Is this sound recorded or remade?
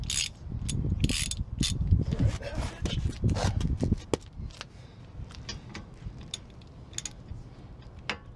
recorded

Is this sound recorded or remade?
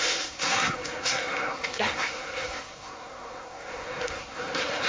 remade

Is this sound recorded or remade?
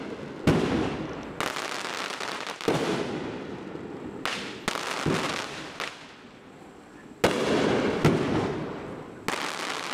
recorded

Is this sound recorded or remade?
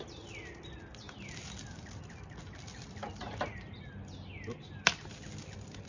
recorded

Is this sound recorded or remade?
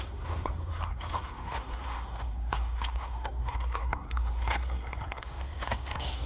remade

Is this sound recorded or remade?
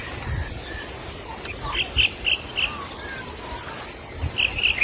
recorded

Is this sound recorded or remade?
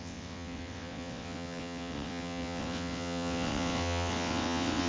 remade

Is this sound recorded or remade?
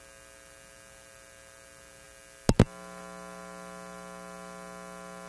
recorded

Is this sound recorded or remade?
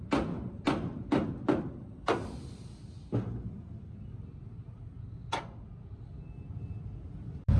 recorded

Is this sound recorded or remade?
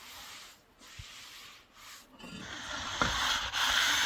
recorded